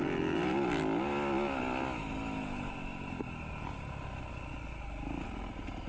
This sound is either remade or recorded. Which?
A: recorded